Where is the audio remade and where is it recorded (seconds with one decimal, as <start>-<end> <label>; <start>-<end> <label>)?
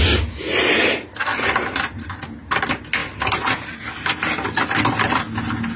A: 0.0-3.0 recorded; 3.0-4.9 remade; 4.9-5.8 recorded